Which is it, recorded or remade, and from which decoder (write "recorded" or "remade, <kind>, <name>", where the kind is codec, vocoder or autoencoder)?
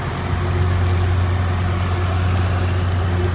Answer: recorded